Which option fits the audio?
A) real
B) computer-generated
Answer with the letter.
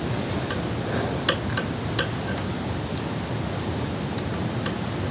A